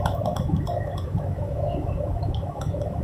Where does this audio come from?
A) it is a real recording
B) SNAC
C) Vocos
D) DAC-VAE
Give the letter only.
D